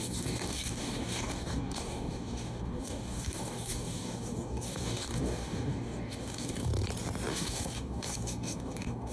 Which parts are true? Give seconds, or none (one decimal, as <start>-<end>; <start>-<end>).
6.7-7.3